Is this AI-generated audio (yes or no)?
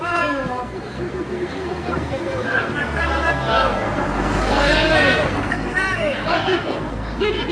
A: yes